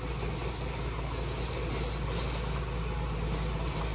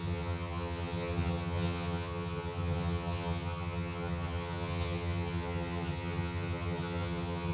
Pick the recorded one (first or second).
first